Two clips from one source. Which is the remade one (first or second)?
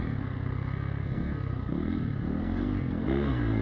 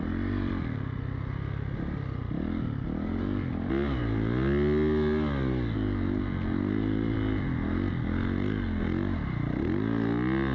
first